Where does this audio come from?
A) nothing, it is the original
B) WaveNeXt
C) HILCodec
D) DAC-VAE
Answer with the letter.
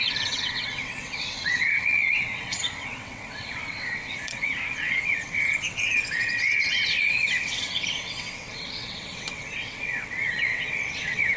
B